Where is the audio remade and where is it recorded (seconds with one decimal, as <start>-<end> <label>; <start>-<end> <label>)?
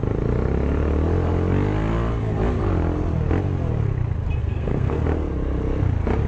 0.0-4.4 recorded; 4.4-5.0 remade; 5.0-6.3 recorded